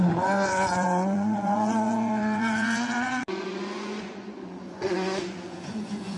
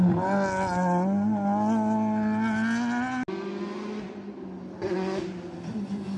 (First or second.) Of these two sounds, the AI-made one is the first